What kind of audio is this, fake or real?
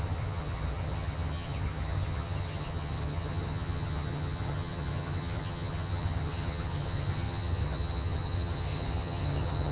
fake